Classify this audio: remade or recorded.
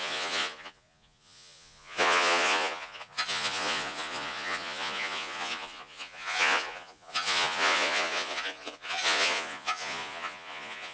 remade